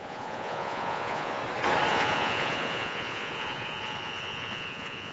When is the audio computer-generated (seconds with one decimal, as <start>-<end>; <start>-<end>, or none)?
0.0-1.4; 1.9-5.1